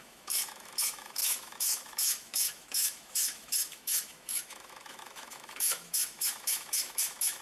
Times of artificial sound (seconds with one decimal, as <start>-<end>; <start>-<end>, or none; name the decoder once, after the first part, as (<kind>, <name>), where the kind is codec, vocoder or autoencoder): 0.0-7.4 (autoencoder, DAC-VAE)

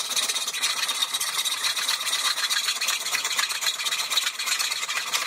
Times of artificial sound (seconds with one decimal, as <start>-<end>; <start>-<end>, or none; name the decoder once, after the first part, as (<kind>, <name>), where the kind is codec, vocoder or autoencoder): 0.0-5.3 (vocoder, BigVGAN v2)

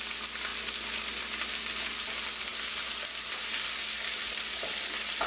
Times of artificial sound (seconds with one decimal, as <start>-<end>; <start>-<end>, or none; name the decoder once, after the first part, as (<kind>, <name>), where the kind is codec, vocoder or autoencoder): none